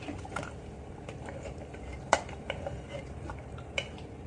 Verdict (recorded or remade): remade